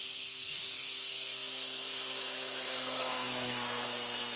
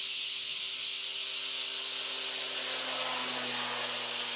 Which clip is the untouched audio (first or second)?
second